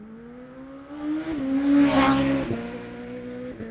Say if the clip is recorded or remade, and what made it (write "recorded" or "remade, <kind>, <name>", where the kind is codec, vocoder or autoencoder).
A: recorded